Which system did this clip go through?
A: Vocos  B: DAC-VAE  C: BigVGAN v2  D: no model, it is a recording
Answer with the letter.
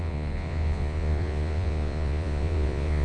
A